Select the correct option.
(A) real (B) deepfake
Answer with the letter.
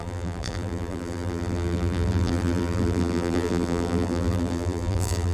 B